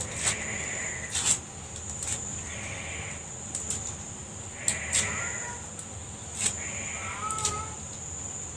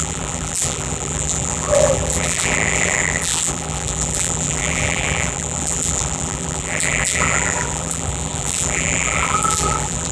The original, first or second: first